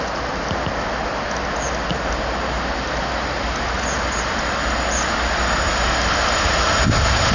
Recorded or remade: recorded